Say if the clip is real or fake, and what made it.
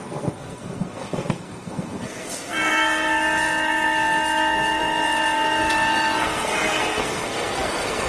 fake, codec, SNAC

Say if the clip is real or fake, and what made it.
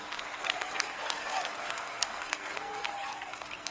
fake, codec, SNAC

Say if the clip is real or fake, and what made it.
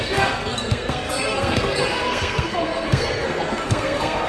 fake, codec, SNAC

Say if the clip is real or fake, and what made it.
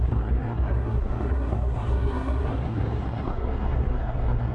fake, codec, SNAC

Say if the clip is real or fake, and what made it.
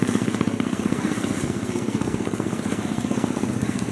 fake, codec, SNAC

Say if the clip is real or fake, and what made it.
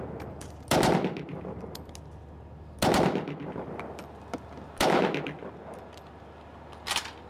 real